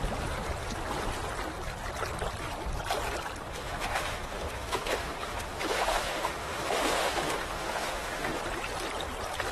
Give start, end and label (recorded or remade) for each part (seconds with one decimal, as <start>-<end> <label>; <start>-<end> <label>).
0.0-3.5 recorded; 3.5-8.4 remade; 8.4-9.5 recorded

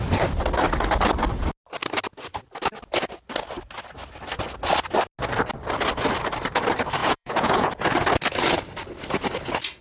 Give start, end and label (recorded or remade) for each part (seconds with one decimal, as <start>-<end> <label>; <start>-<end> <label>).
0.0-7.0 recorded; 7.0-7.7 remade; 7.7-9.8 recorded

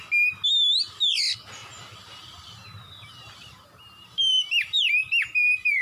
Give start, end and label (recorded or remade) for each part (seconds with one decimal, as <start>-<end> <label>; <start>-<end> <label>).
0.0-1.6 recorded; 1.6-5.0 remade; 5.0-5.8 recorded

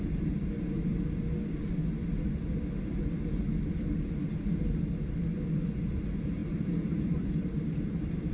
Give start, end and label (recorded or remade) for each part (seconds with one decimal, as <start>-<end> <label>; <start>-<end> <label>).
0.0-0.9 remade; 0.9-5.9 recorded; 5.9-8.3 remade

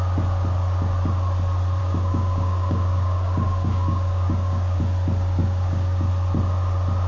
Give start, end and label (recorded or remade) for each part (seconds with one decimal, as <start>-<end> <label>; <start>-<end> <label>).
0.0-1.8 recorded; 1.8-4.8 remade; 4.8-5.4 recorded; 5.4-6.1 remade; 6.1-7.1 recorded

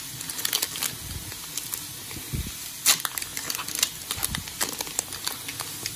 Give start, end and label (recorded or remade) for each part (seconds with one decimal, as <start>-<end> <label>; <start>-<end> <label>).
0.0-6.0 recorded

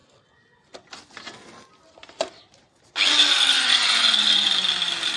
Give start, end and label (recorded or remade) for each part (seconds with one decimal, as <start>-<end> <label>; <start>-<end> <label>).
0.0-3.5 recorded; 3.5-4.5 remade; 4.5-5.2 recorded

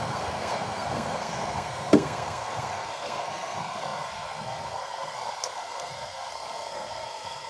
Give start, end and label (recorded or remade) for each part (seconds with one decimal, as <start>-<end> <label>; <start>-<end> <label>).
0.0-7.5 remade